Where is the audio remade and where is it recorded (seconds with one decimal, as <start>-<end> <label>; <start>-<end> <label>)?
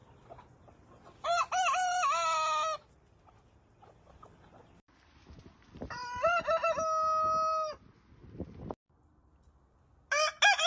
0.0-10.7 recorded